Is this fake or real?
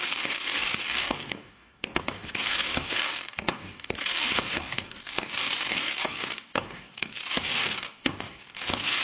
fake